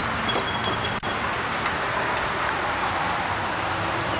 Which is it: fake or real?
real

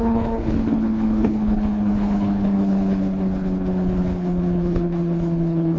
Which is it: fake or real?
fake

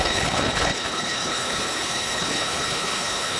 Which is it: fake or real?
fake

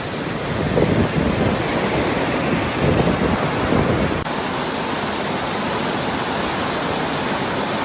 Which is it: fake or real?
real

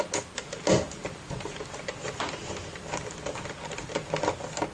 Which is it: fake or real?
real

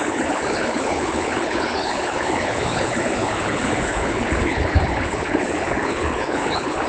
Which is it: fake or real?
fake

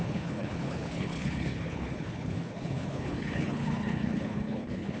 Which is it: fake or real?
fake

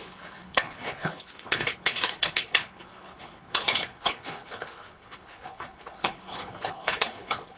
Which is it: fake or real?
fake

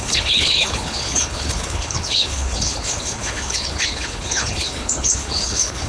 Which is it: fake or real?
fake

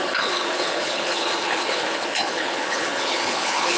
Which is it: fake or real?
fake